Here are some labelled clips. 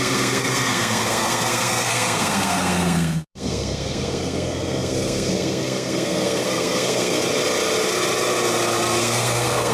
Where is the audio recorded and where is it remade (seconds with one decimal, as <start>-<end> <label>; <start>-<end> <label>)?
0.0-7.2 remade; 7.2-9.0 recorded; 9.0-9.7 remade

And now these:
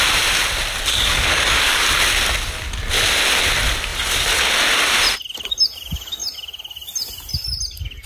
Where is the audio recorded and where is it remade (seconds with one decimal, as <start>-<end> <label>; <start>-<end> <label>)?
0.0-0.9 recorded; 0.9-1.8 remade; 1.8-8.1 recorded

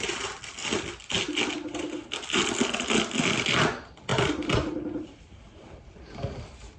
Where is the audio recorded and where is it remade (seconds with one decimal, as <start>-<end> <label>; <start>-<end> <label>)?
0.0-4.1 recorded; 4.1-6.0 remade; 6.0-6.8 recorded

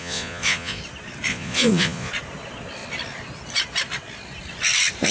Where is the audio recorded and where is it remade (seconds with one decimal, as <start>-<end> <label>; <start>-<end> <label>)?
0.0-0.8 remade; 0.8-1.3 recorded; 1.3-2.1 remade; 2.1-5.1 recorded